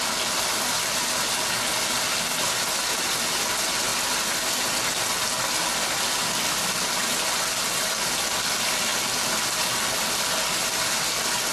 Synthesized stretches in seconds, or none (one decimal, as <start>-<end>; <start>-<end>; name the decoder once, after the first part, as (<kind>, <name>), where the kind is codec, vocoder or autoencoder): none